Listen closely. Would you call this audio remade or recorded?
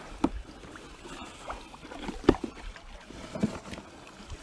recorded